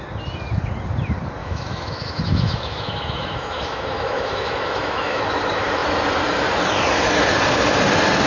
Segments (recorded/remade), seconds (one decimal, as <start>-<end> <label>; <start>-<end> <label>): 0.0-1.4 recorded; 1.4-5.2 remade; 5.2-8.3 recorded